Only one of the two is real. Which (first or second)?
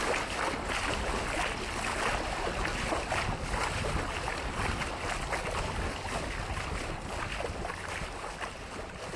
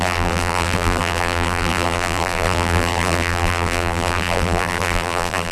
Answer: first